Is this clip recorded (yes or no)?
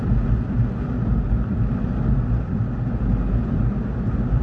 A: yes